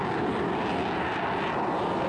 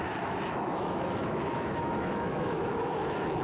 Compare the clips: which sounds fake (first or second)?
second